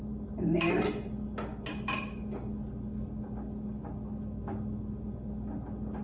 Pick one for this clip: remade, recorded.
recorded